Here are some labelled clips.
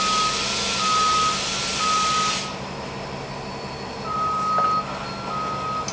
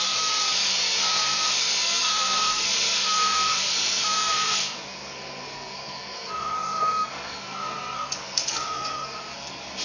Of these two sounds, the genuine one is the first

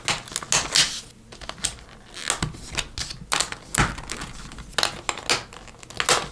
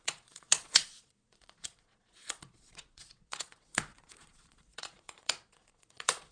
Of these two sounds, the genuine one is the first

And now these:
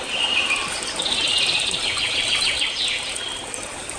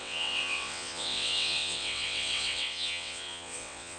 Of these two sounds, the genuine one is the first